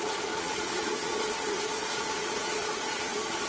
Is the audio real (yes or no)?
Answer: no